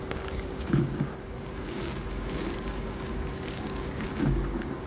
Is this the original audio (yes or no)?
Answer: no